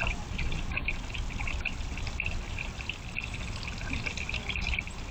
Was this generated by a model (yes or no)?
no